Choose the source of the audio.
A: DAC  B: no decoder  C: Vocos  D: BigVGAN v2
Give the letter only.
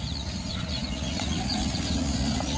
C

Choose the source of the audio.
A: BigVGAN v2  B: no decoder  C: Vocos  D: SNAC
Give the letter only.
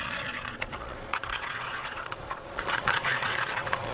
C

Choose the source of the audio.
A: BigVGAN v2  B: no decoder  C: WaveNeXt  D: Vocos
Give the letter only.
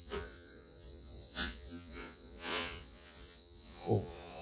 D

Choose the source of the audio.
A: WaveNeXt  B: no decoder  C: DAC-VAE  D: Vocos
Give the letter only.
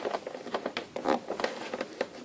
B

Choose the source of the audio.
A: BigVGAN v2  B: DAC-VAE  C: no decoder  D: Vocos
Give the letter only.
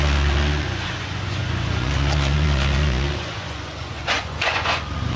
D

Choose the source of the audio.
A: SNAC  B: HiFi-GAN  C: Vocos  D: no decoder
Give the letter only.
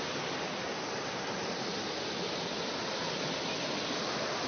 D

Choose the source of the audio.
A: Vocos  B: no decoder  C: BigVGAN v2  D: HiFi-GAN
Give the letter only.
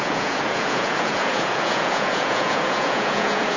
A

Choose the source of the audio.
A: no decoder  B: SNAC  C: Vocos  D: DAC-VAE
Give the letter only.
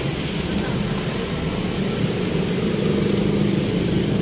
A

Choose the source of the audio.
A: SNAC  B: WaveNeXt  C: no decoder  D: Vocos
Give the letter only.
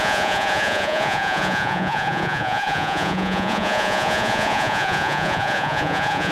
D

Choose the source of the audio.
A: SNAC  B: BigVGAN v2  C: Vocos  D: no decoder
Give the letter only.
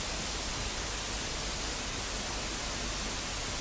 D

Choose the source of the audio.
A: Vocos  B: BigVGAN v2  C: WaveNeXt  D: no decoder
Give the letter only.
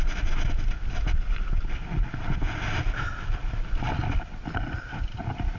D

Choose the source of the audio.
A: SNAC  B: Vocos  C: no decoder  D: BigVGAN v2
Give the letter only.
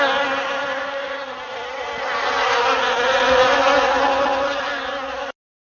C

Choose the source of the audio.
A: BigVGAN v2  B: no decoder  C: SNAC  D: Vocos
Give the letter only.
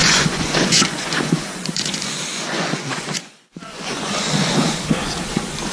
D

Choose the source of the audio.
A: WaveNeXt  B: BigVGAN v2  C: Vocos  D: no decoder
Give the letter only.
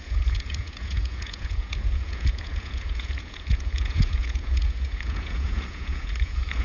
C